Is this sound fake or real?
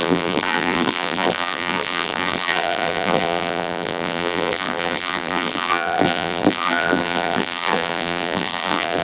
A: fake